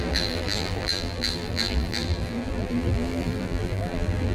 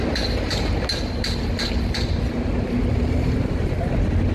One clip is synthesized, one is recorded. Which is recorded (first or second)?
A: second